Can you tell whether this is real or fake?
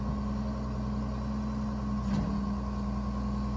real